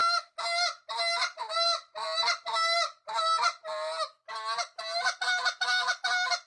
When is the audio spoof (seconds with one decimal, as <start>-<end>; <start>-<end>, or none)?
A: none